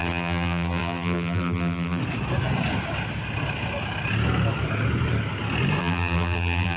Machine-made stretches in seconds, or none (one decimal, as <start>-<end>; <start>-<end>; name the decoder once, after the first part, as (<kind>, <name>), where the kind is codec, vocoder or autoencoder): 0.0-2.0 (vocoder, BigVGAN v2); 5.8-6.8